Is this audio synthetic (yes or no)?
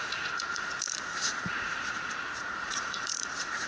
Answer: yes